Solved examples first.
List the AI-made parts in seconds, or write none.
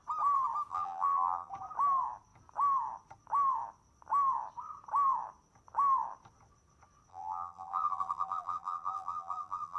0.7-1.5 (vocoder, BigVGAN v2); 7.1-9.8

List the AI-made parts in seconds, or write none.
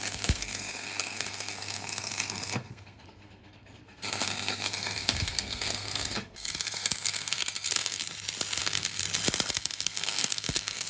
0.0-8.0 (codec, SNAC); 8.6-9.0; 9.5-10.9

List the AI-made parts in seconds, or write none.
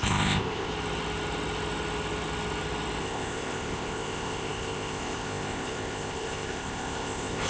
0.0-0.7 (codec, ZipCodec); 3.0-7.5